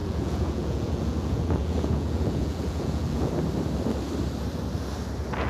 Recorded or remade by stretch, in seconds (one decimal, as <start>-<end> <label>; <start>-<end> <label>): 0.0-3.3 remade; 3.3-5.5 recorded